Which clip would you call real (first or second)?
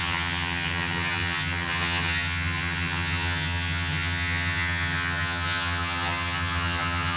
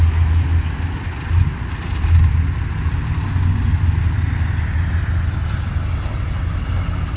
second